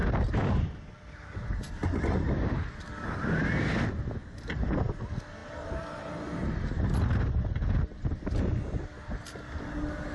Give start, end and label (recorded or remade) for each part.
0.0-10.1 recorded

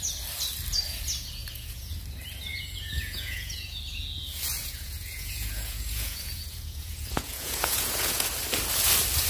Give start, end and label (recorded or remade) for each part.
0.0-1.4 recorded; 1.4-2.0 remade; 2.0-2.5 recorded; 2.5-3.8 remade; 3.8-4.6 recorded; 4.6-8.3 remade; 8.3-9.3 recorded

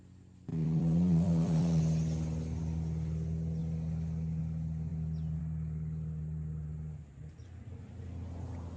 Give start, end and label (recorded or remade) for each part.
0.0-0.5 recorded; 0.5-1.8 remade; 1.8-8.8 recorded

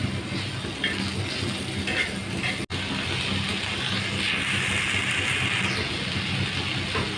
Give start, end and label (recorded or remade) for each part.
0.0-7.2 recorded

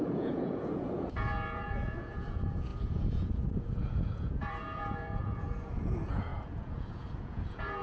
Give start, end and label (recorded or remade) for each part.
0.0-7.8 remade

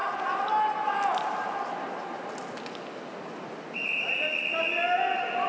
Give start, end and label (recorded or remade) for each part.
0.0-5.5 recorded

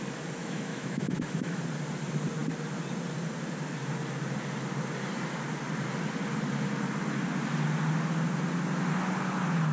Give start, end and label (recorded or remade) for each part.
0.0-0.4 recorded; 0.4-1.6 remade; 1.6-9.7 recorded

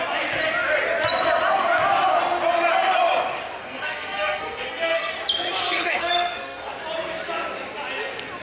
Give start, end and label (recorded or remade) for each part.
0.0-3.6 recorded; 3.6-5.1 remade; 5.1-5.6 recorded; 5.6-6.7 remade; 6.7-8.4 recorded